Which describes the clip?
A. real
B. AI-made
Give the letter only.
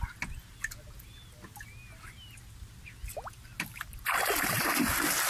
A